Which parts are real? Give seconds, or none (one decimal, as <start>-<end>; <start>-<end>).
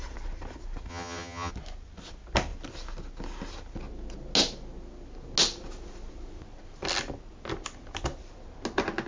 0.0-0.9; 1.5-9.1